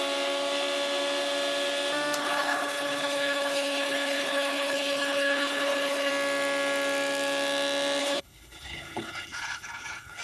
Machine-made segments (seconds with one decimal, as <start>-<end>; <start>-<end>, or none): 2.2-6.1; 8.0-10.2